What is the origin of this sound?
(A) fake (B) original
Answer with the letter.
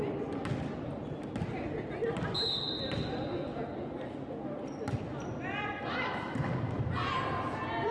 B